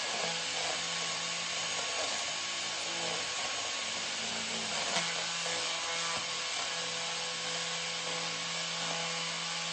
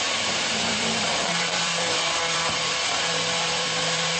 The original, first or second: first